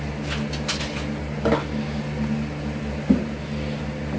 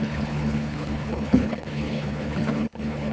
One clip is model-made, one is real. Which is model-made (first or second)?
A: second